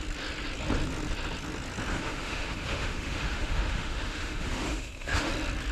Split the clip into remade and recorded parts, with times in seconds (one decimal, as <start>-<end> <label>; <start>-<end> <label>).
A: 0.0-1.9 recorded; 1.9-5.3 remade; 5.3-5.7 recorded